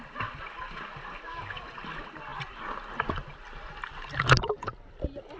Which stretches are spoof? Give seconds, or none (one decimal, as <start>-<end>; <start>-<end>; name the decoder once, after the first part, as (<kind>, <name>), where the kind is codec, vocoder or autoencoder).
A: none